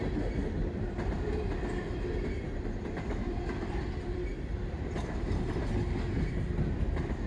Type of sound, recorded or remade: recorded